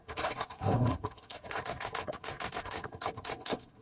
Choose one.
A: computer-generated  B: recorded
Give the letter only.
A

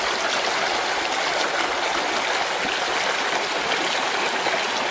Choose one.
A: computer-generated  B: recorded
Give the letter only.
B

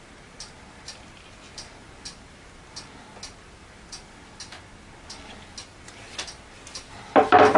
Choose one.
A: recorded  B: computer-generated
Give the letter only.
A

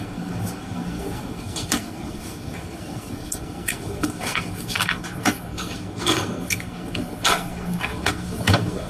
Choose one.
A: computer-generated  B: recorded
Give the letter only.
A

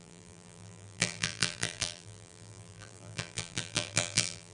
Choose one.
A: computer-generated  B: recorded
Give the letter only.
A